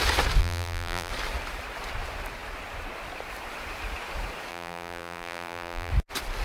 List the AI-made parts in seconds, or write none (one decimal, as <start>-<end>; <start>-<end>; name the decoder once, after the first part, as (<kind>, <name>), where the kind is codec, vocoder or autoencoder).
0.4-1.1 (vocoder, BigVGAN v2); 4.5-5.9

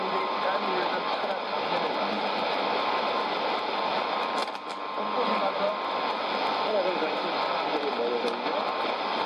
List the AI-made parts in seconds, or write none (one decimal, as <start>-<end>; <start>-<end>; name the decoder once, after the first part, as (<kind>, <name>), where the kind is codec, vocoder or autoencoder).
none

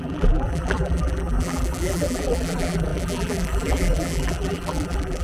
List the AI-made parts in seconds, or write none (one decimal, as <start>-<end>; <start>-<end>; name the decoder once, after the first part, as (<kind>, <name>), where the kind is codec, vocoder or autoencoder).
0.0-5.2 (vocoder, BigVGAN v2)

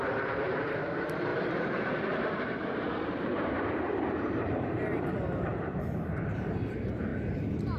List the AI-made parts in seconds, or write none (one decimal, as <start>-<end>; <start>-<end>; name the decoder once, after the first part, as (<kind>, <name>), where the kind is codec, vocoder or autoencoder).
0.0-7.1 (vocoder, BigVGAN v2)